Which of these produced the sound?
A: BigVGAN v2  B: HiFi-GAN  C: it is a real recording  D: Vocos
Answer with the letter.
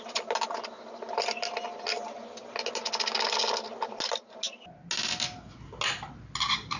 C